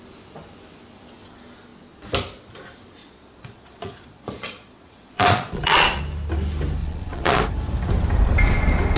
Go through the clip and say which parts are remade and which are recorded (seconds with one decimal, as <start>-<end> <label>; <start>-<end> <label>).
0.0-3.0 recorded; 3.0-6.0 remade; 6.0-6.8 recorded; 6.8-7.4 remade; 7.4-9.0 recorded